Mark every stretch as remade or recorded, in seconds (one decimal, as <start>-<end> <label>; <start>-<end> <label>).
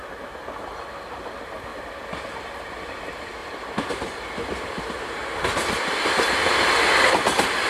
0.0-1.7 recorded; 1.7-2.3 remade; 2.3-3.4 recorded; 3.4-4.8 remade; 4.8-7.7 recorded